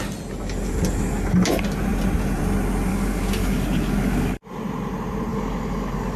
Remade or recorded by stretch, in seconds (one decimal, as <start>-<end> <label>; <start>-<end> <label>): 0.0-2.9 recorded; 2.9-4.4 remade; 4.4-5.3 recorded; 5.3-6.2 remade